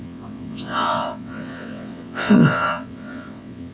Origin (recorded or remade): remade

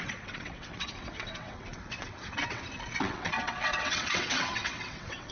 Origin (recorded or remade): remade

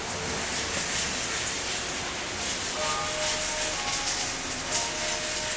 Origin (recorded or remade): recorded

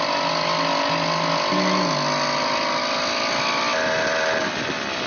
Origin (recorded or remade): recorded